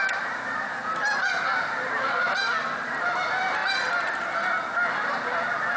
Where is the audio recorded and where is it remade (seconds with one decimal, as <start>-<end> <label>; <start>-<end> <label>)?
0.0-0.8 remade; 0.8-1.3 recorded; 1.3-2.3 remade; 2.3-3.0 recorded; 3.0-3.6 remade; 3.6-5.8 recorded